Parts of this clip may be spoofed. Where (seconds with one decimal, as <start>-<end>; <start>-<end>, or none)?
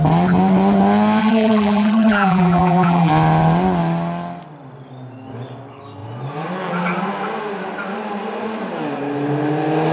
1.2-3.1